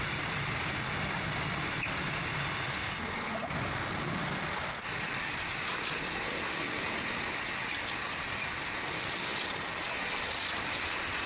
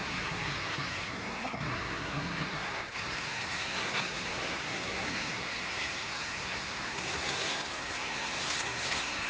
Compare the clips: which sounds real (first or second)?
first